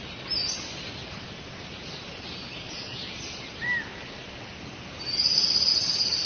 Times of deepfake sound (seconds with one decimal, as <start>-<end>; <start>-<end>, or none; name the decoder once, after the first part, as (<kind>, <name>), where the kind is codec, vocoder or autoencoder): 1.0-3.9 (vocoder, BigVGAN v2); 5.7-6.3